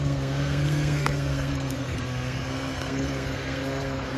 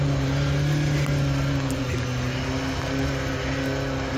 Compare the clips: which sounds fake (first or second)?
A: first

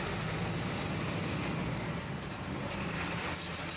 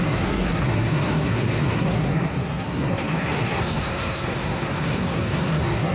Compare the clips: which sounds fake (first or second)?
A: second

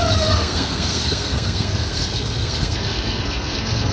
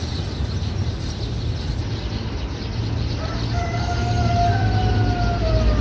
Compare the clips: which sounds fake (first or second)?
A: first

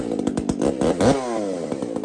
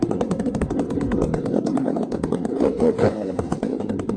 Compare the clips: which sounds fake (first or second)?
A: second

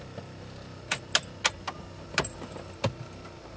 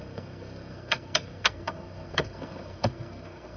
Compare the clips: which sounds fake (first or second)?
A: second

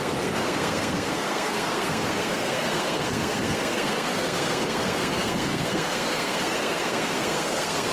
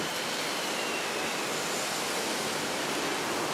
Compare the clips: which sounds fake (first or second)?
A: first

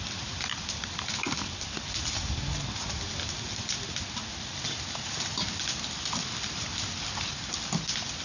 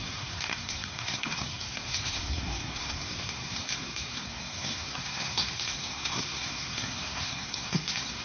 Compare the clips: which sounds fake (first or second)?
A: second